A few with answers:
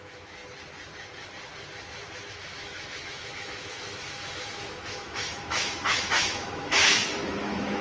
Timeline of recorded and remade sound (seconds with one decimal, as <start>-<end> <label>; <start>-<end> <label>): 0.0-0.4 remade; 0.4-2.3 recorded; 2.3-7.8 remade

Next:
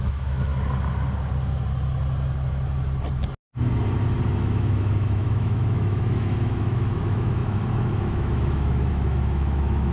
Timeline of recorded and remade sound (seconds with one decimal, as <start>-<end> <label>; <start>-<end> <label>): 0.0-0.5 remade; 0.5-4.3 recorded; 4.3-9.9 remade

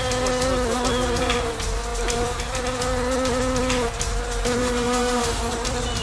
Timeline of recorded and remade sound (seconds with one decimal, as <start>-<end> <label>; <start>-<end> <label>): 0.0-4.6 recorded; 4.6-5.4 remade; 5.4-6.0 recorded

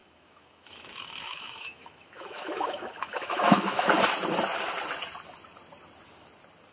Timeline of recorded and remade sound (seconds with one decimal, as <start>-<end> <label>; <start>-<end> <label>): 0.0-4.0 remade; 4.0-6.7 recorded

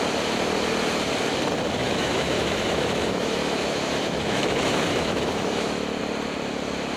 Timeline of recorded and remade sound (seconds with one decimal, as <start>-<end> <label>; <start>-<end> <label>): 0.0-1.8 recorded; 1.8-6.0 remade; 6.0-7.0 recorded